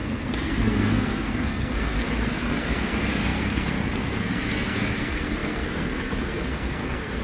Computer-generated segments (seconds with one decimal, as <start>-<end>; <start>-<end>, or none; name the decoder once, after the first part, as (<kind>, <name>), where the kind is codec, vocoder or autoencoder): 0.0-7.2 (codec, SNAC)